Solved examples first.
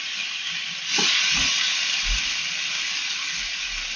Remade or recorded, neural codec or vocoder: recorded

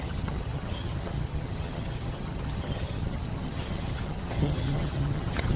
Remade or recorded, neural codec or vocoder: remade, vocoder, HiFi-GAN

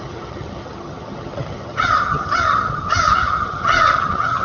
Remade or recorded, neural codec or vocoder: remade, vocoder, HiFi-GAN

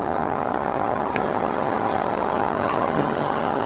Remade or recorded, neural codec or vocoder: remade, vocoder, HiFi-GAN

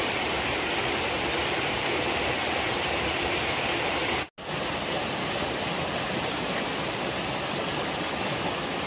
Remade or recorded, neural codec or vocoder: recorded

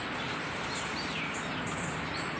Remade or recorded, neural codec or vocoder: recorded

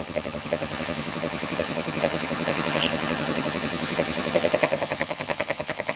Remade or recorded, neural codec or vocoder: remade, vocoder, HiFi-GAN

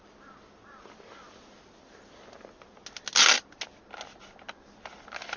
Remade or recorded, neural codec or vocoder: recorded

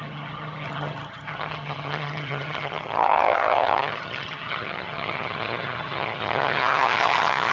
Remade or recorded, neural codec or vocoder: remade, vocoder, HiFi-GAN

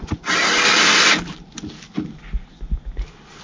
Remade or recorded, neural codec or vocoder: recorded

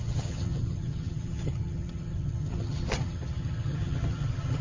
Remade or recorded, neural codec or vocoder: remade, vocoder, HiFi-GAN